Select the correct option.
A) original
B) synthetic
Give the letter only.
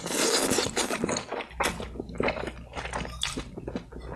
A